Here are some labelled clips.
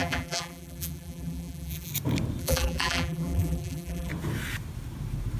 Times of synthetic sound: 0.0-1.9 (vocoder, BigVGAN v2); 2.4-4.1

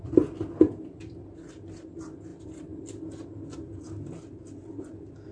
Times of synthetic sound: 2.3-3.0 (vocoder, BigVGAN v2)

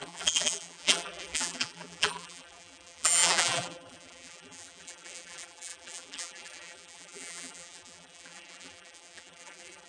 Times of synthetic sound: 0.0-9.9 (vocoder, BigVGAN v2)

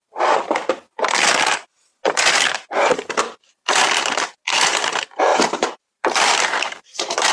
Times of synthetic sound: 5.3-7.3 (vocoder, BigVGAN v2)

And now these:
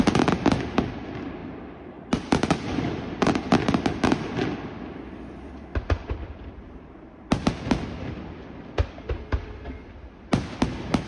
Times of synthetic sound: 1.4-6.1 (vocoder, BigVGAN v2)

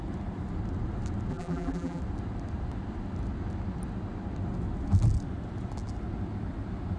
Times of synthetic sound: 1.3-2.0 (vocoder, BigVGAN v2)

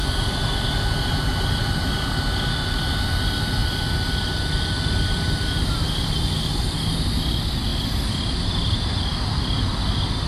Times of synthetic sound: 3.6-6.4 (vocoder, BigVGAN v2); 7.7-9.0